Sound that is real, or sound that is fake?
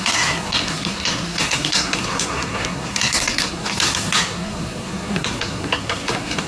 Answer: fake